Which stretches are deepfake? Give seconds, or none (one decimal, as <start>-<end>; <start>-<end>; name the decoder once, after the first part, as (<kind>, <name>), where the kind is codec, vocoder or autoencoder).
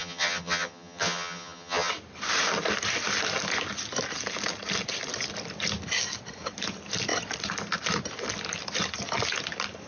0.0-1.9 (vocoder, HiFi-GAN)